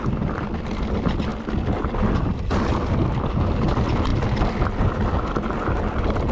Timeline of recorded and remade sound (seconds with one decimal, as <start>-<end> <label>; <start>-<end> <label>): 0.0-6.3 recorded